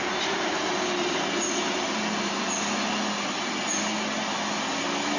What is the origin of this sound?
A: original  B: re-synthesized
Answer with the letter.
A